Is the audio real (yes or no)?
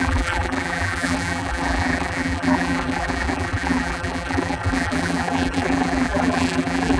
no